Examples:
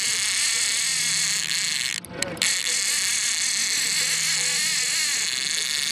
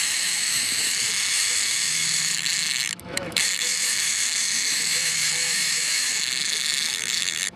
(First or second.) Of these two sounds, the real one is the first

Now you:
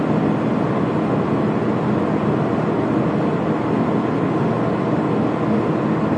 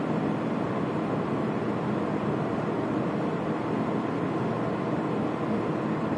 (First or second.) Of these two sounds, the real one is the first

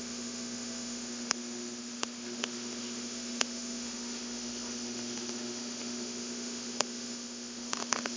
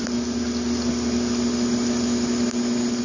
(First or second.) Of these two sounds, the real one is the second